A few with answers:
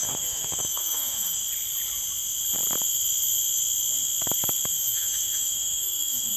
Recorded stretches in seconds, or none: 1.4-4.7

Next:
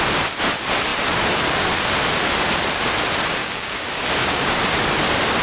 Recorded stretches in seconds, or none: 0.0-3.4; 4.6-5.4

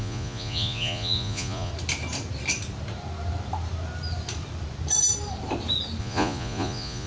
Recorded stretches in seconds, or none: 1.7-6.0